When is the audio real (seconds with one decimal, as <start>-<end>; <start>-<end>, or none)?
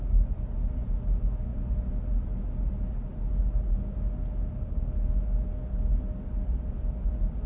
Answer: 0.0-7.5